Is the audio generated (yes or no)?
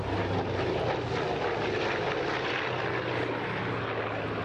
no